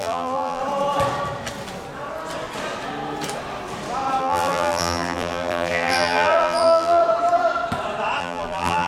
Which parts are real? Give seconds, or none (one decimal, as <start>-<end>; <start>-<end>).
0.6-4.2; 7.0-8.2